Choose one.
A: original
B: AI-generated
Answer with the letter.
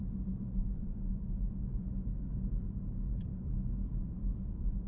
B